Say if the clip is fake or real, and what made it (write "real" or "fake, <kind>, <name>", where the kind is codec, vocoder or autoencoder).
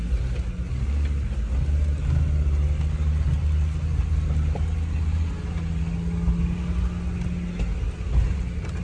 real